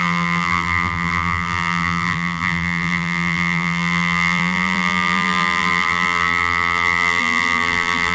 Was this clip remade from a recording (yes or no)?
yes